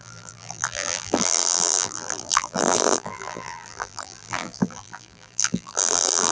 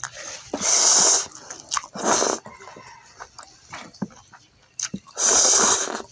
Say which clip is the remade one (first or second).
first